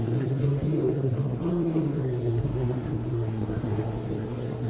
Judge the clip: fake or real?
fake